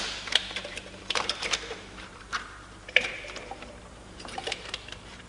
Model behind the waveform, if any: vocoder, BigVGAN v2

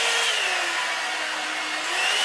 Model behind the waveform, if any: none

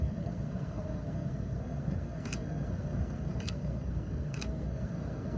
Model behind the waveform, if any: codec, SNAC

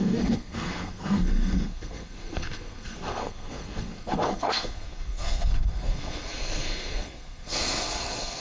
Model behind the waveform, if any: codec, SNAC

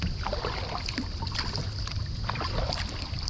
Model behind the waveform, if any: vocoder, BigVGAN v2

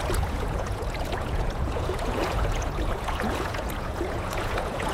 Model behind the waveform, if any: vocoder, Vocos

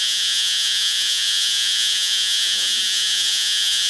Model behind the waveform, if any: vocoder, Vocos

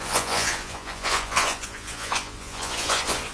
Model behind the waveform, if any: vocoder, Vocos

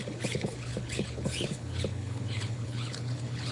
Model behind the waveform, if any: codec, HILCodec